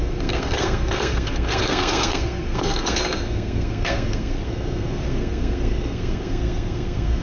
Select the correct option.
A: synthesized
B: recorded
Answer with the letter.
A